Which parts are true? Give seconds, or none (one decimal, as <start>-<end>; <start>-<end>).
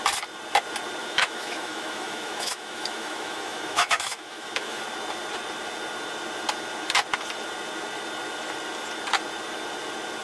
0.0-1.0; 4.8-10.2